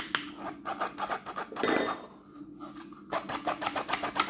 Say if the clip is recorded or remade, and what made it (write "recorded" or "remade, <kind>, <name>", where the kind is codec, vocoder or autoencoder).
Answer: recorded